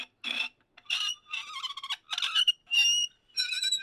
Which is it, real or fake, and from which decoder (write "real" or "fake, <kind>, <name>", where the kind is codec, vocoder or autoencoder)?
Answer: real